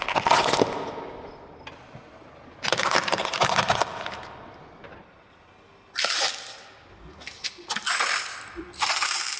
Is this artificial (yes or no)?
no